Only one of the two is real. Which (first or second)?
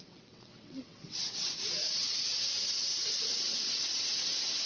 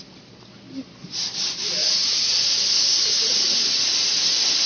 second